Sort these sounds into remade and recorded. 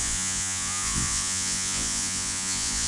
remade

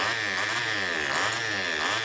recorded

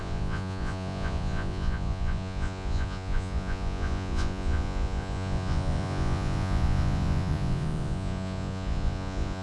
remade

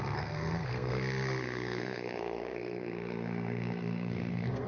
remade